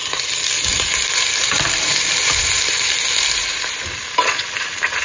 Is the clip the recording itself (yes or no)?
no